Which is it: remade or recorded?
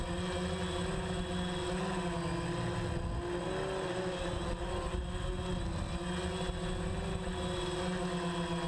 recorded